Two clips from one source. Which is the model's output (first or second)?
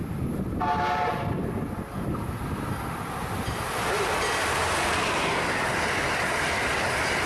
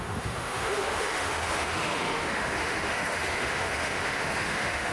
second